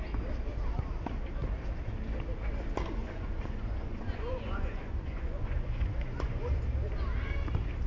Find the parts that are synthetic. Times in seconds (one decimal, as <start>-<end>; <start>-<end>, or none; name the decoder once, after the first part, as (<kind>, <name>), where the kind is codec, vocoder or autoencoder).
3.0-6.6 (vocoder, Vocos)